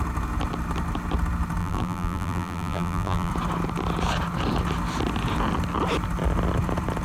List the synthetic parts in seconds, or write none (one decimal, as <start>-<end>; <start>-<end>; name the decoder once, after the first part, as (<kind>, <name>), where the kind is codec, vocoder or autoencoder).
1.6-3.3 (vocoder, BigVGAN v2)